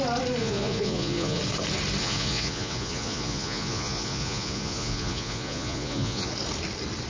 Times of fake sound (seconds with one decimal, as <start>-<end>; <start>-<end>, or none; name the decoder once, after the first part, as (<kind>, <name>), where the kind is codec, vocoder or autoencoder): 0.4-1.4 (vocoder, Vocos); 2.0-6.3